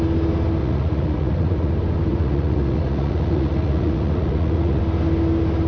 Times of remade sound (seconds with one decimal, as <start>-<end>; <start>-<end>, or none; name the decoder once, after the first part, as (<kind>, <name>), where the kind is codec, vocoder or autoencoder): 0.6-1.7 (vocoder, Vocos); 2.1-4.8